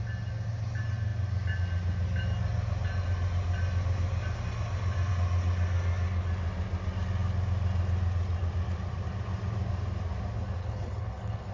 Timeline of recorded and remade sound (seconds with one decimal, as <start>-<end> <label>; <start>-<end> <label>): 0.0-10.6 recorded; 10.6-11.5 remade